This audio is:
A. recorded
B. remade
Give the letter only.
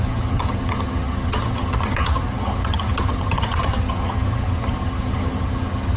B